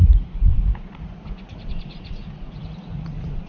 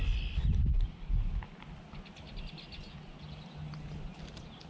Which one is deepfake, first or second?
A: first